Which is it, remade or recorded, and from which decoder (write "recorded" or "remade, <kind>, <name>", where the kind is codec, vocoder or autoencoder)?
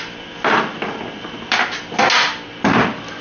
recorded